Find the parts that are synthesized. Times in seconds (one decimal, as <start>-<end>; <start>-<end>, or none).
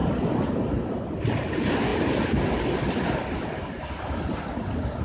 1.2-1.9